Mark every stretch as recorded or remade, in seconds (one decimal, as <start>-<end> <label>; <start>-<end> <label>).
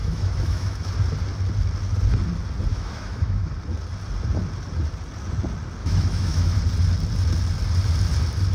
0.0-0.9 remade; 0.9-2.7 recorded; 2.7-3.5 remade; 3.5-5.8 recorded; 5.8-6.6 remade; 6.6-8.5 recorded